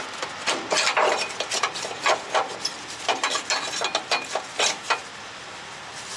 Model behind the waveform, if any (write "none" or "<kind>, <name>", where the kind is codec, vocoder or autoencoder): none